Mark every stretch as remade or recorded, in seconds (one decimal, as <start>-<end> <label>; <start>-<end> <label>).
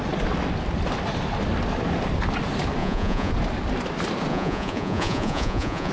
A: 0.0-2.8 recorded; 2.8-3.3 remade; 3.3-4.3 recorded; 4.3-5.9 remade